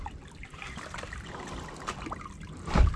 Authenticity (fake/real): real